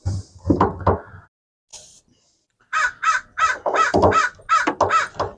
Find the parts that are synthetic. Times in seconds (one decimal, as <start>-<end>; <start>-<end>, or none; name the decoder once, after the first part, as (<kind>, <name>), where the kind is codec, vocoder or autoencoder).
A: none